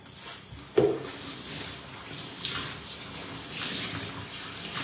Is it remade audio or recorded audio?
recorded